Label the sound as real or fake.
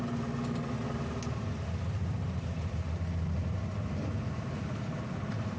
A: real